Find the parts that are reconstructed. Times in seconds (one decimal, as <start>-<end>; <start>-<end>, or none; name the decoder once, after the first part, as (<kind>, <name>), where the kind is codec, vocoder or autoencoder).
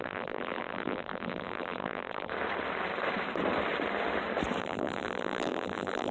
0.0-2.3 (vocoder, BigVGAN v2); 4.6-6.1